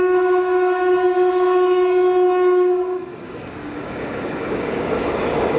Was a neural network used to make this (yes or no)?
yes